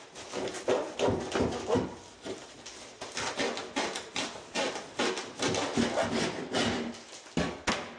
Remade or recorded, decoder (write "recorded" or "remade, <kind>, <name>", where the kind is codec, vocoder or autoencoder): recorded